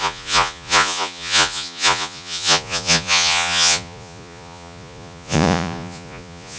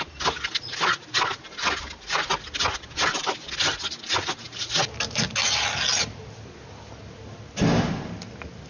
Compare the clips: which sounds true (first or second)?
second